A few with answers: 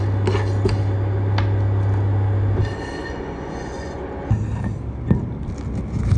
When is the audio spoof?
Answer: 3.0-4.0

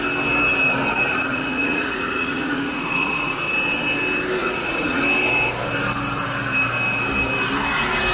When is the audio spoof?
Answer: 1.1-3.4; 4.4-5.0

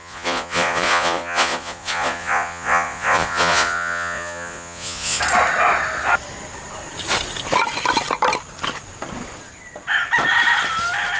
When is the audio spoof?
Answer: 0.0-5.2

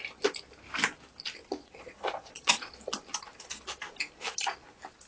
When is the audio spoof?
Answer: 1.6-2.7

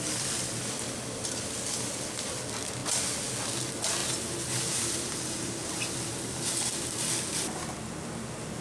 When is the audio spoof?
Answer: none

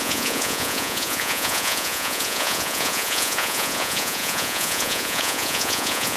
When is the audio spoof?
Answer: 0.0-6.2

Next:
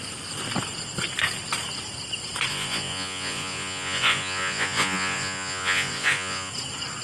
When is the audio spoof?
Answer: 2.5-6.5